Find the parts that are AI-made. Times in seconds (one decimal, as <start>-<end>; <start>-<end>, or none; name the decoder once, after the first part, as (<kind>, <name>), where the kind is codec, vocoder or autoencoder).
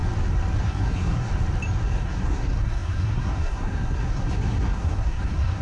0.6-1.3 (codec, SNAC); 1.8-5.6